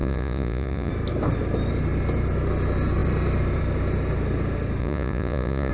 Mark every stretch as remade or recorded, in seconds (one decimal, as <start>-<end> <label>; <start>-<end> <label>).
0.0-0.9 remade; 0.9-4.8 recorded; 4.8-5.7 remade